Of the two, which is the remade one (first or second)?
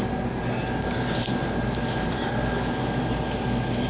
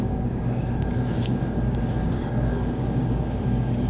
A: second